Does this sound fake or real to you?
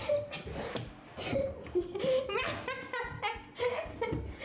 real